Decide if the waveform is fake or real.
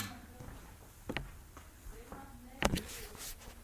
real